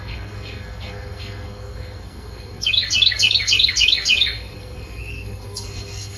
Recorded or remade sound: remade